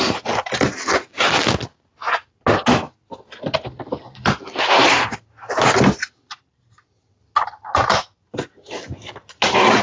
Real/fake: real